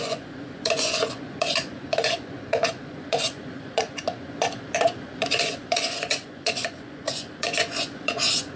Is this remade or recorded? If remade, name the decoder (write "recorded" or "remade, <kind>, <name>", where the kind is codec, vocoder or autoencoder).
remade, vocoder, Vocos